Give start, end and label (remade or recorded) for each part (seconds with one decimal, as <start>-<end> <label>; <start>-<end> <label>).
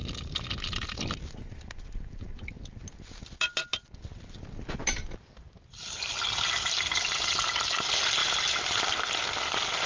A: 0.0-9.9 recorded